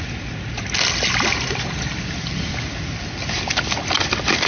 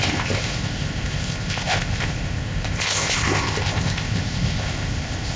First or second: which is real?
first